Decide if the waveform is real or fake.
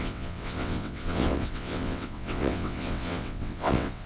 fake